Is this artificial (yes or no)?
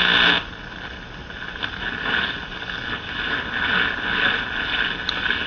no